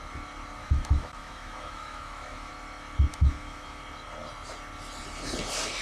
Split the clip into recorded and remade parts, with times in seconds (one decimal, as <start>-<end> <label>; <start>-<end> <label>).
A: 0.0-0.6 recorded; 0.6-2.5 remade; 2.5-3.1 recorded; 3.1-3.8 remade; 3.8-5.8 recorded